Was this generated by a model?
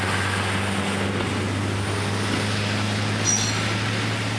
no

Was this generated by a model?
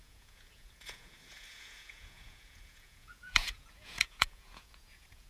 yes